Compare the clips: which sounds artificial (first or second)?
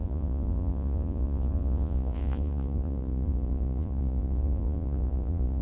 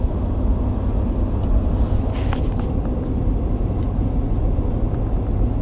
first